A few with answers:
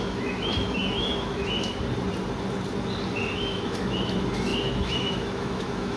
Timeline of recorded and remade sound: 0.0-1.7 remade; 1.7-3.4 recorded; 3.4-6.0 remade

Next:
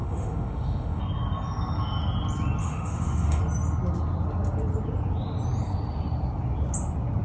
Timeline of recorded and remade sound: 0.0-1.0 remade; 1.0-2.6 recorded; 2.6-3.4 remade; 3.4-7.2 recorded

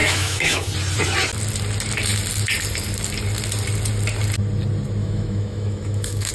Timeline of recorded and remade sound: 0.0-0.7 remade; 0.7-5.0 recorded; 5.0-6.3 remade

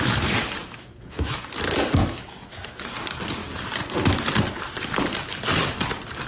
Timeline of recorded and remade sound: 0.0-0.6 recorded; 0.6-1.5 remade; 1.5-2.0 recorded; 2.0-2.8 remade; 2.8-6.3 recorded